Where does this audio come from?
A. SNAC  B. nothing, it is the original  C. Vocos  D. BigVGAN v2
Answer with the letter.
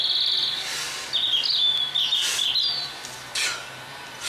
B